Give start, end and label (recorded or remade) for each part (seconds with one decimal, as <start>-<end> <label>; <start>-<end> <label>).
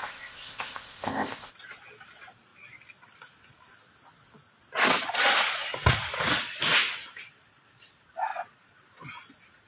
0.0-1.5 remade; 1.5-9.7 recorded